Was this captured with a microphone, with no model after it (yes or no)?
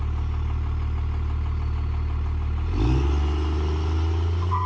yes